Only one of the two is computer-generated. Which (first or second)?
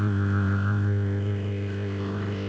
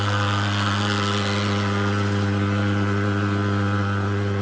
first